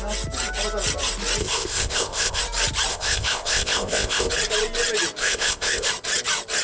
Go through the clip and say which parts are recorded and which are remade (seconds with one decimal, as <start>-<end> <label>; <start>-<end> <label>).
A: 0.0-1.4 recorded; 1.4-2.4 remade; 2.4-2.9 recorded; 2.9-4.3 remade; 4.3-5.2 recorded; 5.2-5.9 remade; 5.9-6.6 recorded